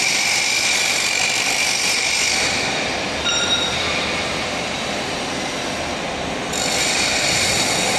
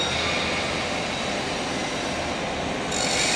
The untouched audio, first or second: second